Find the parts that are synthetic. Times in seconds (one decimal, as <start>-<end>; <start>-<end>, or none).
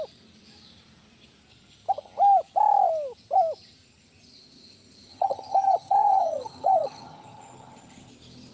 5.1-8.1